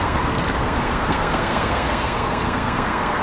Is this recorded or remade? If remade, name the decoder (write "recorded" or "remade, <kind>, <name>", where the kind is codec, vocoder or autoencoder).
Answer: remade, codec, SNAC